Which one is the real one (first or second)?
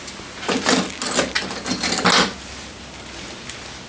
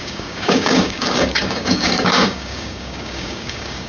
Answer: first